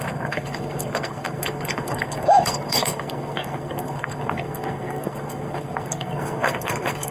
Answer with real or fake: fake